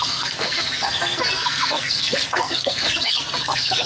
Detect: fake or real fake